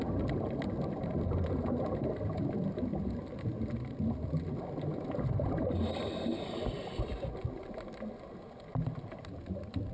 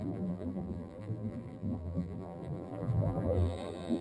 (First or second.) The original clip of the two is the first